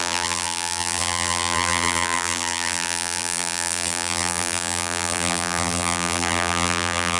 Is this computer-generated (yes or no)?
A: yes